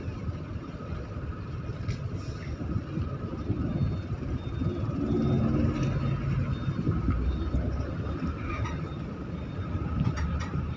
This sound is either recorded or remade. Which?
recorded